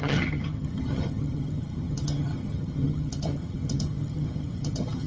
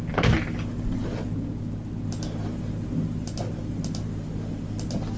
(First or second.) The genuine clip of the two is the second